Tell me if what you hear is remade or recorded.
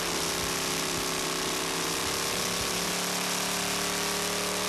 recorded